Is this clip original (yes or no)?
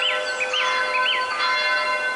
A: yes